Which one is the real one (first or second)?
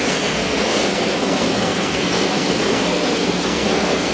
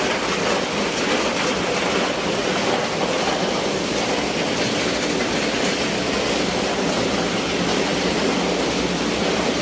second